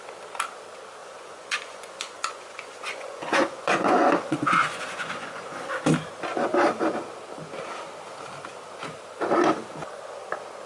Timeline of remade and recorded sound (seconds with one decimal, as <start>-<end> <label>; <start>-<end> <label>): 0.0-1.0 recorded; 1.0-5.8 remade; 5.8-10.7 recorded